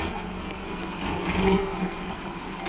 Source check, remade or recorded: remade